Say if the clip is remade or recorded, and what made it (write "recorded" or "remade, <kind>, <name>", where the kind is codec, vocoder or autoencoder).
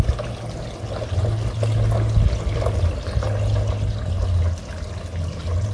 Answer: recorded